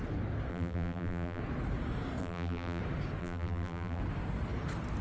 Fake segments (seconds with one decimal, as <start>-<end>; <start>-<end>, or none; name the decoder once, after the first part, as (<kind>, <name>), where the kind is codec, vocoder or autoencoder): 0.5-1.4 (vocoder, BigVGAN v2); 2.2-2.8; 3.2-4.0